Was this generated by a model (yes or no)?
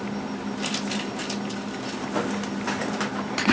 no